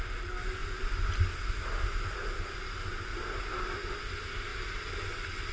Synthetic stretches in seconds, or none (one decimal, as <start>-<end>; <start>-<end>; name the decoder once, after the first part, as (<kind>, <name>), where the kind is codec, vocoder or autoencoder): none